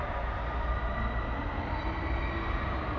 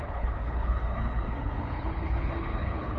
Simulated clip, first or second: second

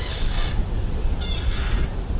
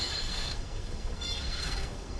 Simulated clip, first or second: second